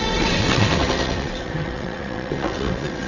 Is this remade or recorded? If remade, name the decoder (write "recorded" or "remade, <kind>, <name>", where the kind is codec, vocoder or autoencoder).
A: remade, vocoder, WaveNeXt